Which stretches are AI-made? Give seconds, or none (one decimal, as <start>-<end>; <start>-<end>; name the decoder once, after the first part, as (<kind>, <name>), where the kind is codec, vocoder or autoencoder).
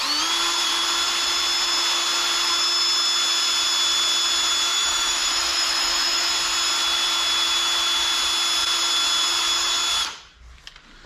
4.7-6.3 (autoencoder, DAC-VAE)